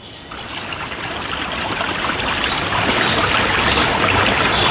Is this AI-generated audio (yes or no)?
no